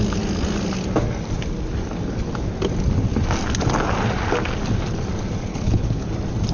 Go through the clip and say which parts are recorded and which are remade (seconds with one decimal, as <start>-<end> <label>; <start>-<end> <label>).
0.0-5.5 recorded; 5.5-6.1 remade; 6.1-6.5 recorded